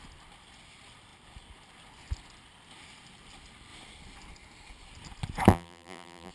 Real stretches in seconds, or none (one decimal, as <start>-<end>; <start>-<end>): 0.0-5.5